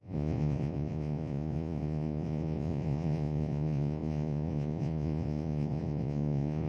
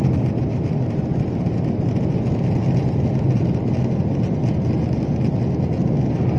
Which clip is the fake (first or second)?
first